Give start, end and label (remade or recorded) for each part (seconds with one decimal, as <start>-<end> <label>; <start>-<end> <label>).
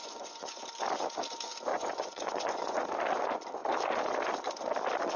0.0-0.6 remade; 0.6-1.7 recorded; 1.7-2.8 remade; 2.8-5.2 recorded